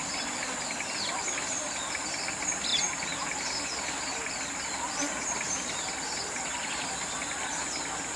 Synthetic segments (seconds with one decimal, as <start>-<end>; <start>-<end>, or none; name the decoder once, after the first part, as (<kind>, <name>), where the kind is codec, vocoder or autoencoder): none